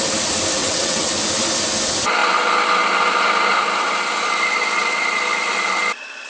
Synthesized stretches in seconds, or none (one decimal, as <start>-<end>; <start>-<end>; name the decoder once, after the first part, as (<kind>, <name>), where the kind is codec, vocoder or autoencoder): 0.6-1.1 (vocoder, WaveNeXt)